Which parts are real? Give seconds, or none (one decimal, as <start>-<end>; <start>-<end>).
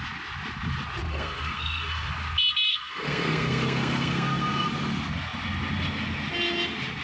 0.0-1.1; 2.1-2.7; 4.7-7.0